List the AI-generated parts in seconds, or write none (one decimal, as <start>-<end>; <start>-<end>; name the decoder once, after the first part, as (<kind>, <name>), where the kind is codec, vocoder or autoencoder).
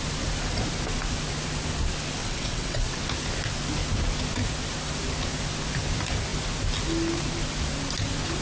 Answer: 2.2-3.0 (vocoder, WaveNeXt)